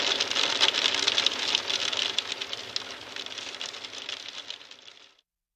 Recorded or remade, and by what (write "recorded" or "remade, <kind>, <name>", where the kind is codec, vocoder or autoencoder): recorded